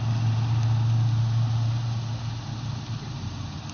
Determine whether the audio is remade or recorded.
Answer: recorded